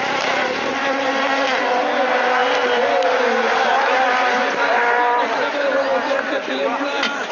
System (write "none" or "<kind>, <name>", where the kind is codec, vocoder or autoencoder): none